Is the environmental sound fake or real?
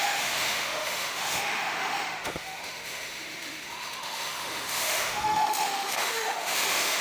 fake